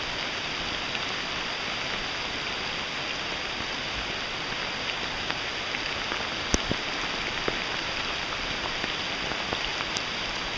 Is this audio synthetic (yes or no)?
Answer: no